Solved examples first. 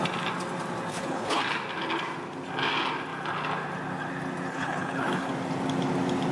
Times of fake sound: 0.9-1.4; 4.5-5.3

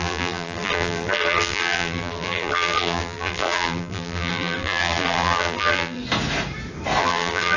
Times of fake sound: 0.0-6.0; 7.0-7.6

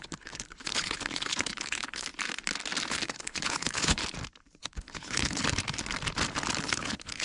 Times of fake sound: 0.0-2.1; 2.9-4.0; 4.6-5.4; 6.6-7.2

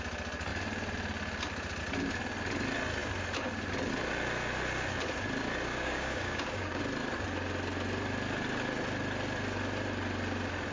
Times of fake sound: 5.7-6.8

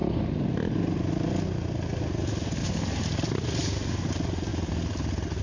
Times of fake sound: none

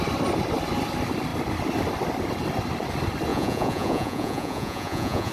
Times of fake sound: 3.3-5.3

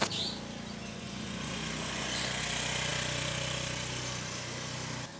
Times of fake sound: 0.8-2.4